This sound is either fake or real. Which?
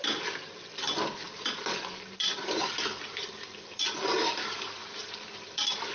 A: real